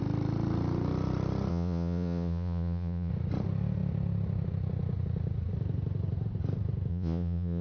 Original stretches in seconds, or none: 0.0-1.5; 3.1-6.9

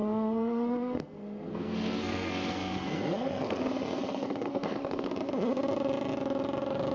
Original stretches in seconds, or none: 3.6-4.0; 5.1-6.9

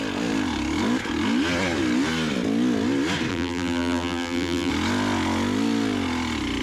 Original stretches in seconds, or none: 0.0-3.3; 4.7-6.6